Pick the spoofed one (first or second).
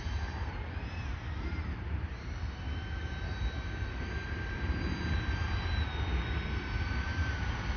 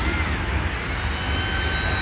first